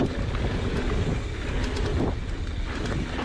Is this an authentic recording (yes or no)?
yes